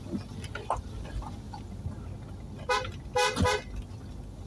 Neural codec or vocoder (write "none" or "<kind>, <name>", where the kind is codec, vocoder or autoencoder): none